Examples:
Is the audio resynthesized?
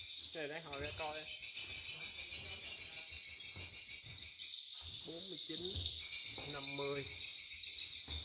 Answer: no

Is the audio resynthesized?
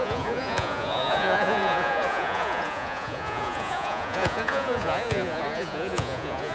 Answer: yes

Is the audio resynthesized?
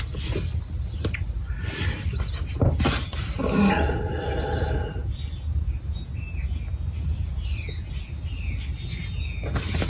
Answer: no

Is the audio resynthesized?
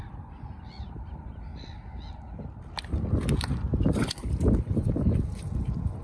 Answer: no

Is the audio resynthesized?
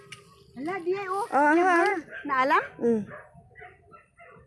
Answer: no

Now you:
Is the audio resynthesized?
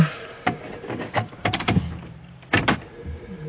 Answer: yes